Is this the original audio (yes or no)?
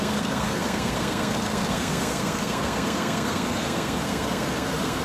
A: no